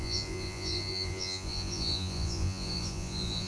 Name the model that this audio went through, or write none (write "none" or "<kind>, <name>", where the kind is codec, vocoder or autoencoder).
vocoder, Vocos